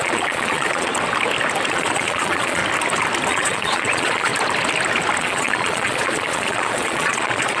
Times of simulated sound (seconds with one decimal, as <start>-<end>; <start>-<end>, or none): 0.0-0.9; 1.7-2.6; 3.3-4.3; 5.2-7.6